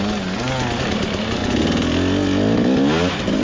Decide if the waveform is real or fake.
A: real